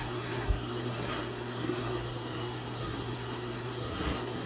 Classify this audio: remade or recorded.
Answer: remade